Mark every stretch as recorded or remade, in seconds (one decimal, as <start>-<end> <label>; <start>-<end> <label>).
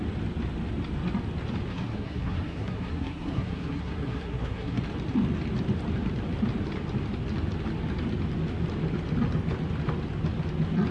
0.0-1.7 recorded; 1.7-4.8 remade; 4.8-10.9 recorded